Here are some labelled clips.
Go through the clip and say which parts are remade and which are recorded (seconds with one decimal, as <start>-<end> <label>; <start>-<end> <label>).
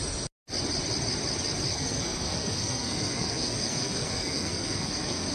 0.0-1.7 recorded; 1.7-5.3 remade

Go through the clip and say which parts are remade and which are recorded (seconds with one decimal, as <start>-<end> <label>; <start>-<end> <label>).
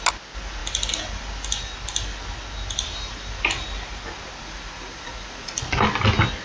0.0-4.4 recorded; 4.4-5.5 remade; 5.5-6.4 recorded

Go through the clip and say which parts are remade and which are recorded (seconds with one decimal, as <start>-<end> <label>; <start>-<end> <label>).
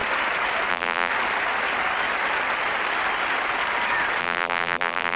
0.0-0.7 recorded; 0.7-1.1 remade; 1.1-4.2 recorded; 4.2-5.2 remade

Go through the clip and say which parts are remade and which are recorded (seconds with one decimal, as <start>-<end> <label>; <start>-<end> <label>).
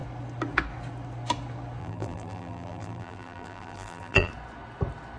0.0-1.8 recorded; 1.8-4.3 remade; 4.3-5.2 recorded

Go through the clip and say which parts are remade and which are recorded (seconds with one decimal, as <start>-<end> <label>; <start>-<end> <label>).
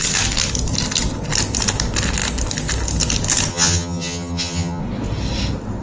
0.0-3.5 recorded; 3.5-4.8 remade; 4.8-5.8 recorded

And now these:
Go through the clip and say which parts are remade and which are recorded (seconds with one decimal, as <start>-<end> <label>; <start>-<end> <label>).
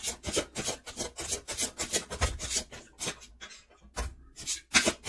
0.0-5.1 recorded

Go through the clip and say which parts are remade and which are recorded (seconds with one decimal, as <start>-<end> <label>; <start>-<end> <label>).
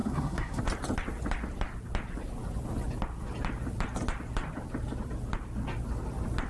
0.0-0.6 remade; 0.6-6.5 recorded